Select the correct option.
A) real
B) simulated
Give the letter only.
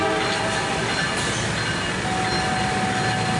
A